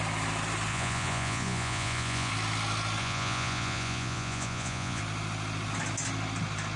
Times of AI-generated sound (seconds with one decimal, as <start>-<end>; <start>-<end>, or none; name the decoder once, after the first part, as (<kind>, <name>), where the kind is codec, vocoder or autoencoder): 0.7-2.3 (vocoder, Vocos); 3.0-5.0